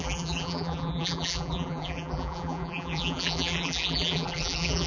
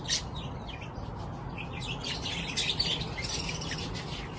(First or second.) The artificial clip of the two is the first